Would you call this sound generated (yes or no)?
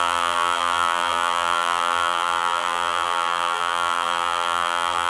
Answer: yes